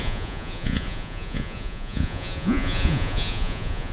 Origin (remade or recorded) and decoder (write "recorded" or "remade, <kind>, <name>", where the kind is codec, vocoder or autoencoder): remade, vocoder, Vocos